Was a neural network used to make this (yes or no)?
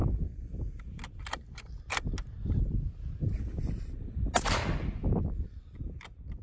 no